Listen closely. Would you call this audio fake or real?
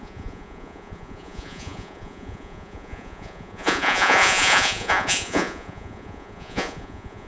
fake